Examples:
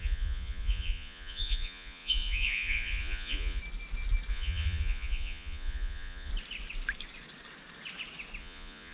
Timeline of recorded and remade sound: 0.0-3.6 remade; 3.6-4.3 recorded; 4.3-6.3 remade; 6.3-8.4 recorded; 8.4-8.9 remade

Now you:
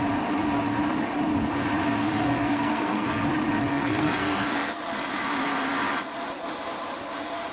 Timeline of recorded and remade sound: 0.0-2.0 recorded; 2.0-3.3 remade; 3.3-3.7 recorded; 3.7-4.8 remade; 4.8-7.5 recorded

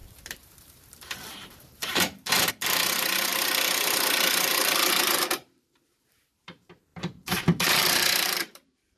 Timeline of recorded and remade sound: 0.0-9.0 remade

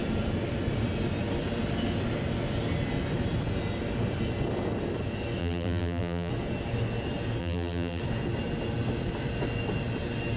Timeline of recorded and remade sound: 0.0-5.4 recorded; 5.4-6.3 remade; 6.3-7.4 recorded; 7.4-8.0 remade; 8.0-10.4 recorded

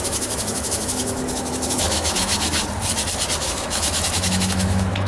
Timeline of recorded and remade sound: 0.0-2.6 remade; 2.6-3.4 recorded; 3.4-5.1 remade

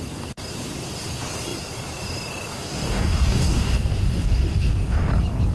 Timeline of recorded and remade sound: 0.0-2.6 recorded; 2.6-5.1 remade; 5.1-5.5 recorded

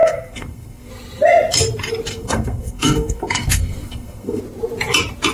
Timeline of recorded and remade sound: 0.0-0.9 remade; 0.9-2.1 recorded; 2.1-4.4 remade; 4.4-5.3 recorded